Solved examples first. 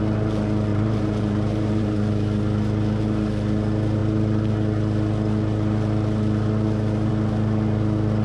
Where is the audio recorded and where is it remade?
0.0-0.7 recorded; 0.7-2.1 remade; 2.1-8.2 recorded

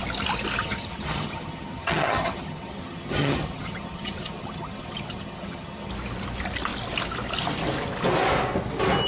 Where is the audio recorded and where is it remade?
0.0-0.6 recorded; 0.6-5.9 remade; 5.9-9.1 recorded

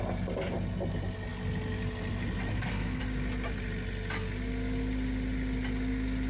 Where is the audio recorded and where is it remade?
0.0-2.5 recorded; 2.5-3.0 remade; 3.0-6.3 recorded

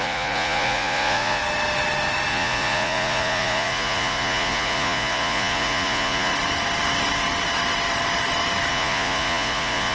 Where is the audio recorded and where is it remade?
0.0-1.4 remade; 1.4-2.3 recorded; 2.3-6.3 remade; 6.3-8.7 recorded; 8.7-9.9 remade